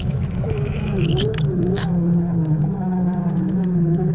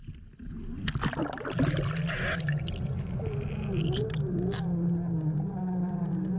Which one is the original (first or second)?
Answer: second